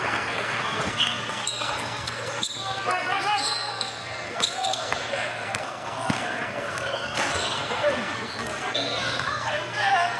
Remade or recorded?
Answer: remade